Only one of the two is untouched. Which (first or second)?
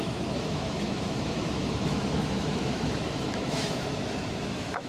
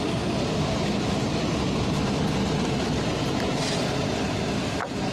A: second